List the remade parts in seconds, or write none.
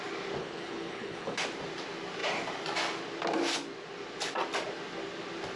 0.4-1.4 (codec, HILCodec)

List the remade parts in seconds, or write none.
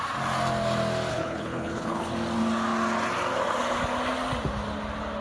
1.1-2.1 (codec, HILCodec)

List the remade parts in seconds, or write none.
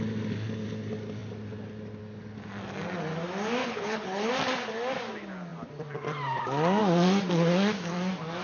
3.6-4.3 (codec, HILCodec)